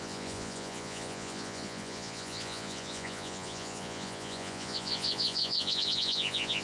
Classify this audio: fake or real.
fake